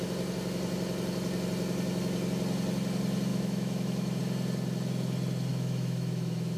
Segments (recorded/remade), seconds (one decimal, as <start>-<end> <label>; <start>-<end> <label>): 0.0-3.3 recorded; 3.3-4.2 remade; 4.2-5.5 recorded; 5.5-6.6 remade